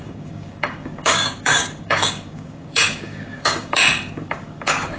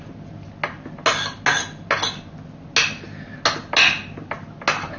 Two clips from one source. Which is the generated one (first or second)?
first